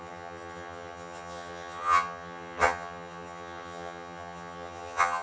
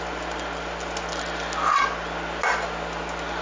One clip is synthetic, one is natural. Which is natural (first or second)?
second